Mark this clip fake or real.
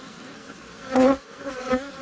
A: fake